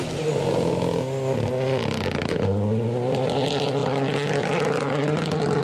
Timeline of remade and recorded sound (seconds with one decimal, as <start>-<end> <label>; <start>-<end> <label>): 0.0-5.6 recorded